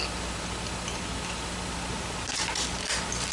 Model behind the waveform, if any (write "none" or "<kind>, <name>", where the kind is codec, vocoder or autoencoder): none